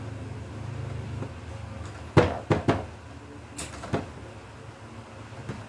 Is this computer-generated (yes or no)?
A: no